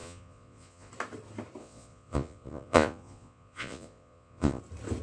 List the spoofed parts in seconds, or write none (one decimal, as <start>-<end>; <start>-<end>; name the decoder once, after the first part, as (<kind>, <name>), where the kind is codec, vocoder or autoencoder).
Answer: 0.0-0.9 (vocoder, Vocos); 1.6-4.6